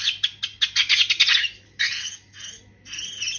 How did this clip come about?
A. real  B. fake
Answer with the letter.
A